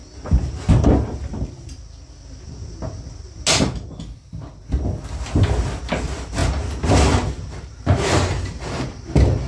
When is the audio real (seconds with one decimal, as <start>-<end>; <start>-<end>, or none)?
0.0-9.5